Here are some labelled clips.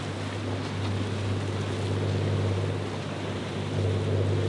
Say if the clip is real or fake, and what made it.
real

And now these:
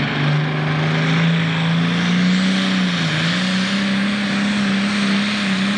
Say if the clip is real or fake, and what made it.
real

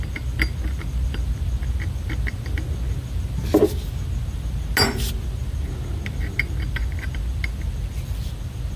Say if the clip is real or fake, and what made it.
real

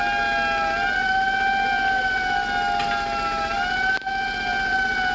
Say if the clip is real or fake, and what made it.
real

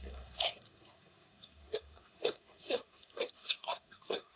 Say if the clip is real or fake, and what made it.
fake, codec, SNAC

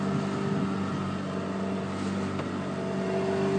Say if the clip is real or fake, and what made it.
real